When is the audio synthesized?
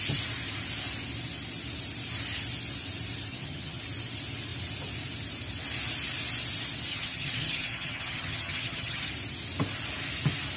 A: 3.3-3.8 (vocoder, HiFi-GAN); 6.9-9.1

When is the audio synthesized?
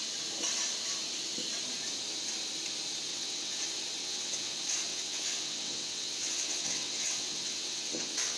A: 3.1-3.6 (vocoder, WaveNeXt); 4.0-4.5; 4.9-8.4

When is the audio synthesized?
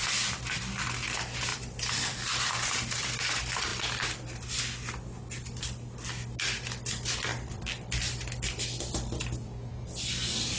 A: 1.5-3.1 (vocoder, BigVGAN v2); 9.4-10.6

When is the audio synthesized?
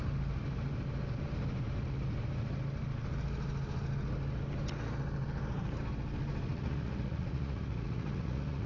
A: 6.5-8.7 (vocoder, Vocos)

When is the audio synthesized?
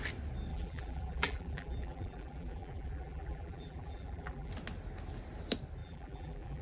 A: 0.5-4.5 (vocoder, BigVGAN v2); 5.8-6.6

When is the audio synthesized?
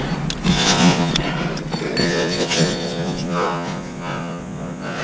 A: 0.5-1.1 (vocoder, Vocos); 2.0-5.0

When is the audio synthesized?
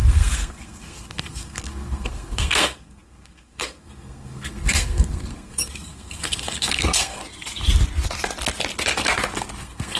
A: 0.0-7.2 (codec, SNAC); 9.6-10.0